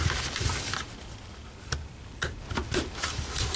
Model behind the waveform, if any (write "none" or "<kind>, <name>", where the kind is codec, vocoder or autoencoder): none